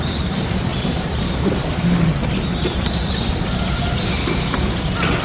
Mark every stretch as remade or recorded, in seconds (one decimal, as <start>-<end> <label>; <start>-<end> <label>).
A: 0.0-2.6 recorded; 2.6-3.3 remade; 3.3-5.2 recorded